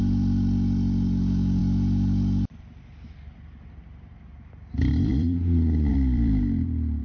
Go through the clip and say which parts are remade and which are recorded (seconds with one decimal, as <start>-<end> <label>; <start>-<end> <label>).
0.0-1.6 remade; 1.6-2.5 recorded; 2.5-7.0 remade